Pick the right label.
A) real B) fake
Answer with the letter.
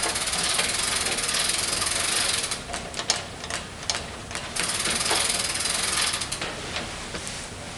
A